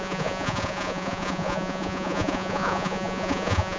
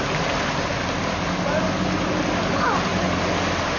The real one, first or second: second